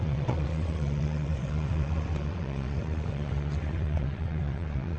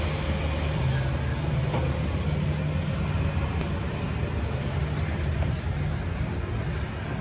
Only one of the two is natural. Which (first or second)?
second